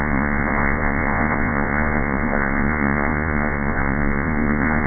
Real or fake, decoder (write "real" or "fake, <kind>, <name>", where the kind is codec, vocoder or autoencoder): fake, vocoder, Vocos